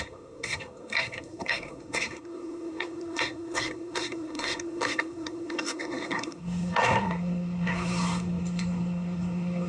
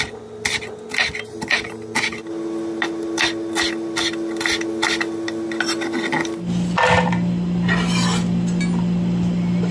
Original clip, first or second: second